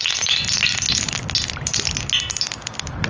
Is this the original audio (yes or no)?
yes